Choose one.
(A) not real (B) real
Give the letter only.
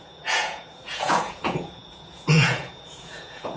A